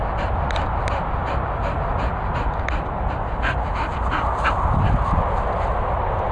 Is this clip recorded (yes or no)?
yes